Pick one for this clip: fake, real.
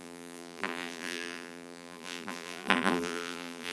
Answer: fake